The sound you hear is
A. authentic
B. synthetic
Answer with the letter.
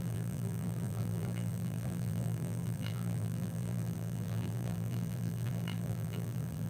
B